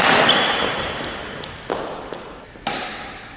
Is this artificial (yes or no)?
no